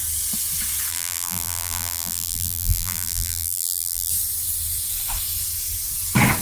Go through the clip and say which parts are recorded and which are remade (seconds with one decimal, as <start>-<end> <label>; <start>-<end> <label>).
0.0-0.9 recorded; 0.9-4.1 remade; 4.1-6.4 recorded